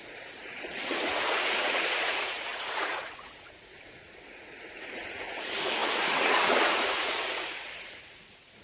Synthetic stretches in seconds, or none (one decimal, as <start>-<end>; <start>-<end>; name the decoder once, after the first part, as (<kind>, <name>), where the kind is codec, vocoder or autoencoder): 0.0-8.6 (vocoder, Vocos)